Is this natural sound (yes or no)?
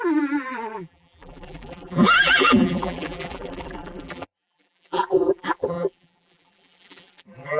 no